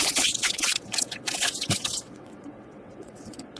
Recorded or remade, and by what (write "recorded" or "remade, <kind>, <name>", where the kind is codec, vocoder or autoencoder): remade, vocoder, WaveNeXt